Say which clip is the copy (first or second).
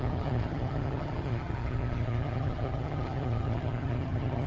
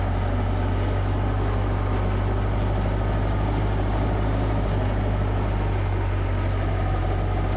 first